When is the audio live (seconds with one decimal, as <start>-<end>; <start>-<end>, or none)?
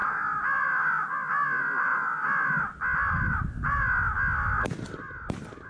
0.0-5.7